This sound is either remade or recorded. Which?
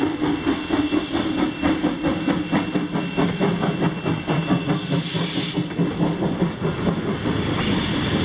recorded